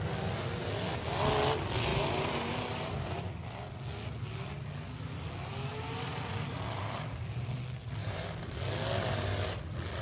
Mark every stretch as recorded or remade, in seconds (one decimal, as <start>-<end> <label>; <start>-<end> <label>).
0.0-1.9 recorded; 1.9-3.2 remade; 3.2-8.0 recorded; 8.0-8.5 remade; 8.5-10.0 recorded

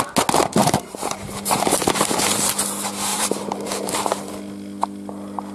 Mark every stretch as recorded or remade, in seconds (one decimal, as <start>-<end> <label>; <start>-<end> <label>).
0.0-0.6 recorded; 0.6-2.4 remade; 2.4-3.1 recorded; 3.1-4.3 remade; 4.3-5.5 recorded

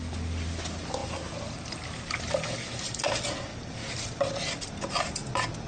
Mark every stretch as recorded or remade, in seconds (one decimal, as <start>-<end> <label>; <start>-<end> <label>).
0.0-5.7 recorded

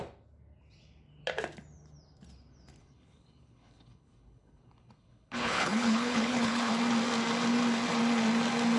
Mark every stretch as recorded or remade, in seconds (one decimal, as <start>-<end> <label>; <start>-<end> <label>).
0.0-2.8 recorded; 2.8-6.7 remade; 6.7-8.8 recorded

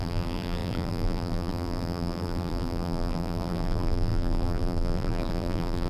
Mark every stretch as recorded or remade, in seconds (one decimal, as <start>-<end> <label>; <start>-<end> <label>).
0.0-5.9 remade